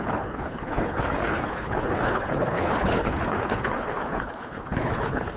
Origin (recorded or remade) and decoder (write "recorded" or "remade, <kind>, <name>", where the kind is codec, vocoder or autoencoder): remade, codec, HILCodec